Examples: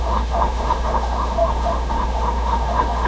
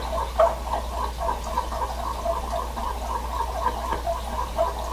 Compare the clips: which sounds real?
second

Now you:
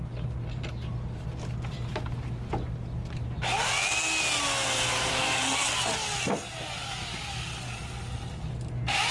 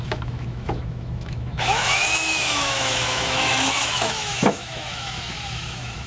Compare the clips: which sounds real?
first